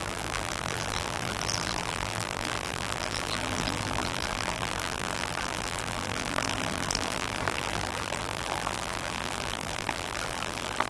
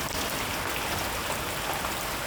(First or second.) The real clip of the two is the second